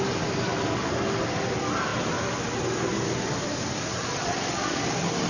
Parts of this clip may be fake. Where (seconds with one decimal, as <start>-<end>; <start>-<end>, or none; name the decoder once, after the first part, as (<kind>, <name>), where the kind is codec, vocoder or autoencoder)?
4.1-4.8 (vocoder, Vocos)